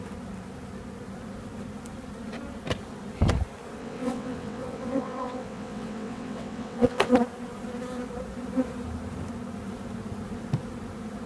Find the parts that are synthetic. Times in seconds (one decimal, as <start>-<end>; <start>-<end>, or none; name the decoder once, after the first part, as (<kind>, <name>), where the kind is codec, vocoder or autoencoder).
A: 3.8-7.1 (vocoder, WaveNeXt)